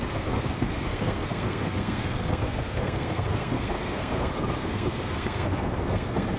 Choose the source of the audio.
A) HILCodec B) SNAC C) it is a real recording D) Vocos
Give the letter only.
B